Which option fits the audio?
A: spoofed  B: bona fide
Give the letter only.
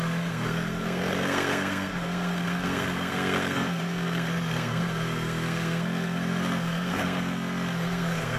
A